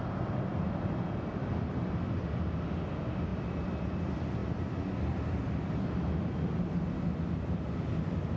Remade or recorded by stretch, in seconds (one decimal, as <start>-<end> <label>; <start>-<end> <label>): 0.0-3.3 recorded; 3.3-4.0 remade; 4.0-8.4 recorded